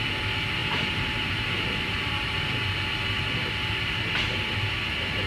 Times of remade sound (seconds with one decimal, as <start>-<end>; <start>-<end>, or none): 0.6-2.4; 3.4-4.0